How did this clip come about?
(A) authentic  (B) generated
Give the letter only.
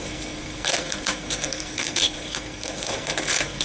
B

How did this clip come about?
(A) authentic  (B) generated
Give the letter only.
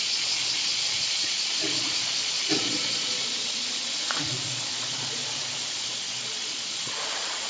B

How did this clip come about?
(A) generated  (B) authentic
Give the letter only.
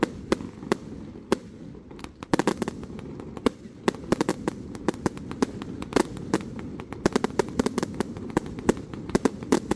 B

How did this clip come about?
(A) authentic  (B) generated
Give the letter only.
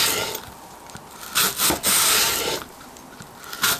A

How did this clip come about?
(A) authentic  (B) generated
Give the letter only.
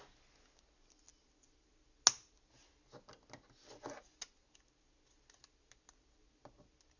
A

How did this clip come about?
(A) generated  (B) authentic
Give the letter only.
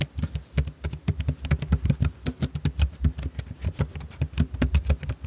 B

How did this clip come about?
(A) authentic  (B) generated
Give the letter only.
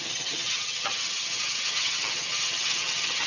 B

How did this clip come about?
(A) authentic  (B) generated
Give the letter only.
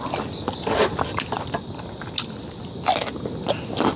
A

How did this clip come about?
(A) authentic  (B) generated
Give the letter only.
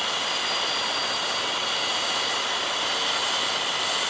A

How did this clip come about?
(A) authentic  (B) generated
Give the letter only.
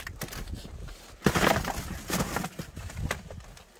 A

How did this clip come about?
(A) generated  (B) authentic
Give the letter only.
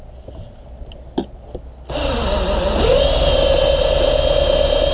B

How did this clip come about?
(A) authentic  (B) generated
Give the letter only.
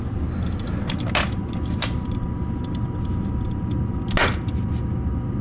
A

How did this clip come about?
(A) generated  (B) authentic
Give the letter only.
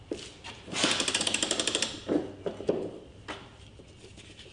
B